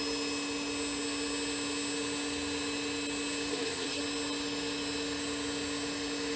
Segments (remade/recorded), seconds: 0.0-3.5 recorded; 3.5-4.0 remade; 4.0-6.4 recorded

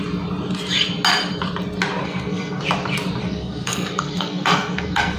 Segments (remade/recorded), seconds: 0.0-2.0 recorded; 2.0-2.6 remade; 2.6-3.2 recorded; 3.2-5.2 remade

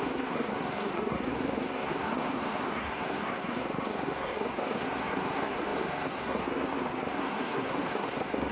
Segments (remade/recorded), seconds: 0.0-8.5 remade